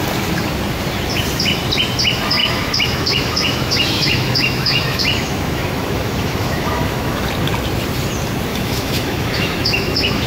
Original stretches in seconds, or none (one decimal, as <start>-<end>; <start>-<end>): 0.0-2.4; 7.3-8.5